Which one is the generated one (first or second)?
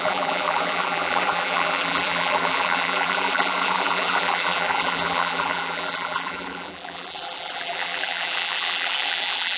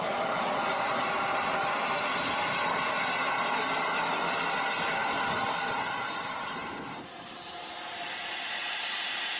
first